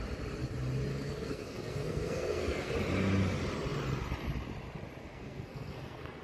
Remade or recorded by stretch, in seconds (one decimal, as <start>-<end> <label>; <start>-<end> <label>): 0.0-0.9 recorded; 0.9-2.7 remade; 2.7-5.0 recorded; 5.0-6.2 remade